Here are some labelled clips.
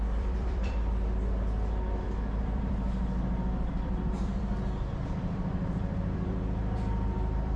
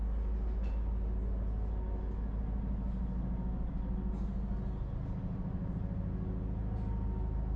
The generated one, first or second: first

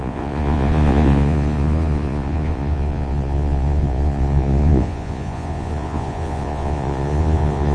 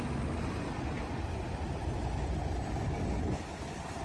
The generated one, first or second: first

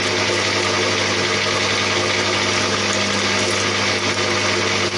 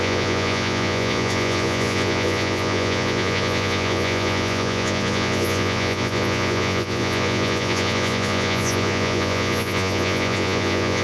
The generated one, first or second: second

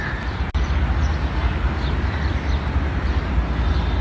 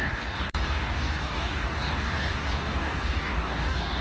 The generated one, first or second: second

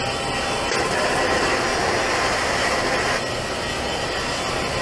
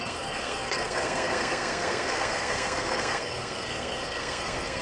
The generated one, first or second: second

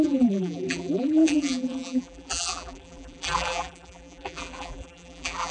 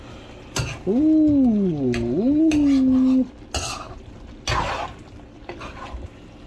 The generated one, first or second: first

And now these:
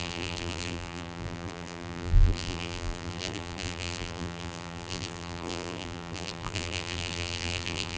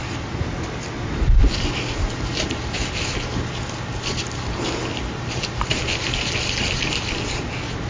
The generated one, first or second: first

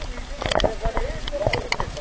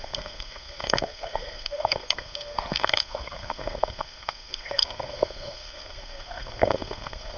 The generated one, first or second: second